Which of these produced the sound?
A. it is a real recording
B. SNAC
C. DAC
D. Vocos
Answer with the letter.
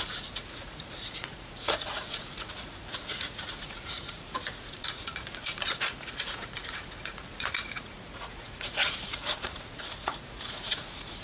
D